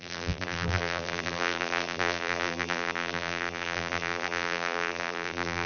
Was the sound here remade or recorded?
remade